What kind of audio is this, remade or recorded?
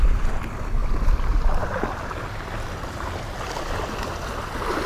recorded